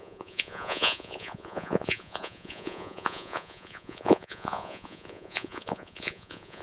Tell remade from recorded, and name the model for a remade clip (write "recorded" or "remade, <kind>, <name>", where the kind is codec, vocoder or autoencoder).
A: remade, vocoder, Vocos